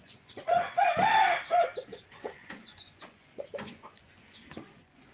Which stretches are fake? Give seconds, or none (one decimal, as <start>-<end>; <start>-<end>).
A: 0.0-0.9; 1.9-5.1